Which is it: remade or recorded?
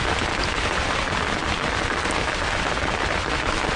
remade